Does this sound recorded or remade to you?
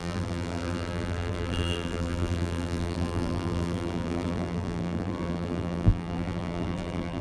remade